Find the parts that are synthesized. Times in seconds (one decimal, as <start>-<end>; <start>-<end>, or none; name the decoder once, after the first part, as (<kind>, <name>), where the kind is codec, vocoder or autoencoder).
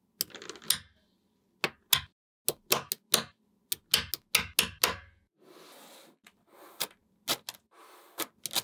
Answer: none